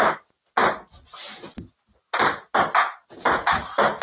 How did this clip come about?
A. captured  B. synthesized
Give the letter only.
A